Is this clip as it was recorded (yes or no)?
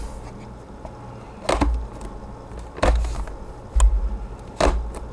yes